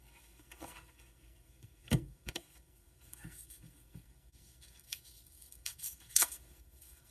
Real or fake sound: fake